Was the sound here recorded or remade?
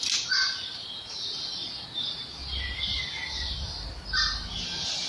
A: recorded